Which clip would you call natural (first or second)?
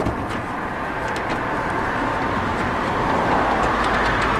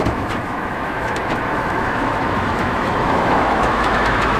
first